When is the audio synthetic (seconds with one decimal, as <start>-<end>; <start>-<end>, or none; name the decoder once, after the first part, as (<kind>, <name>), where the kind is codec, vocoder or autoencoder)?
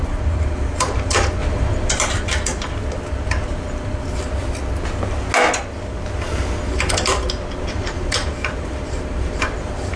0.0-2.5 (vocoder, BigVGAN v2); 7.7-10.0